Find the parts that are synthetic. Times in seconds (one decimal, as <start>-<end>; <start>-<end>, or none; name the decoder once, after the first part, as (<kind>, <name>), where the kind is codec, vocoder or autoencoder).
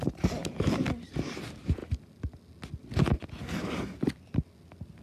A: none